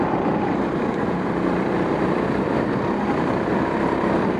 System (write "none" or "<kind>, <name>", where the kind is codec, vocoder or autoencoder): vocoder, BigVGAN v2